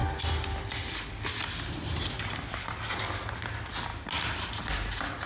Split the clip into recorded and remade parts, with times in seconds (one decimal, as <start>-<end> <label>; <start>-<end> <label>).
0.0-5.3 recorded